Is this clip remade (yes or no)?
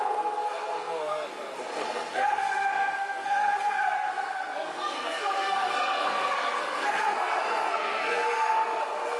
yes